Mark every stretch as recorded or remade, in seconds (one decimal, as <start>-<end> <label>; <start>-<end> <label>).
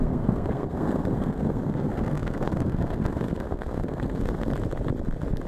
0.0-4.5 remade; 4.5-5.5 recorded